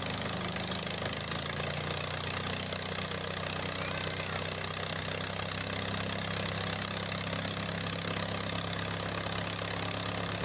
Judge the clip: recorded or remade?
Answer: recorded